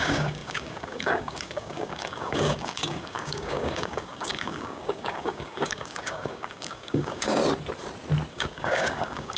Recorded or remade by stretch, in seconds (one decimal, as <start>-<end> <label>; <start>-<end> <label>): 0.0-7.4 remade; 7.4-8.3 recorded; 8.3-9.4 remade